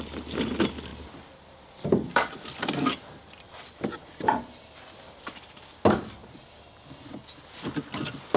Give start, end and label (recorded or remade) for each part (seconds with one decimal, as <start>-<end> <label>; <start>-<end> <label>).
0.0-8.4 recorded